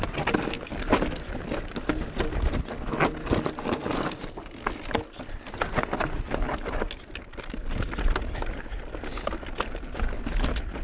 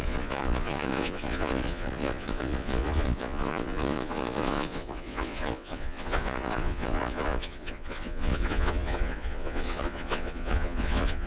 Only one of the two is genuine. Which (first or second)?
first